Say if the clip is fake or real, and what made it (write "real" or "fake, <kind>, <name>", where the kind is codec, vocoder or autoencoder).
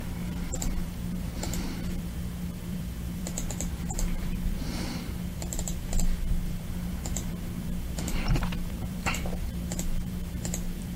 fake, vocoder, BigVGAN v2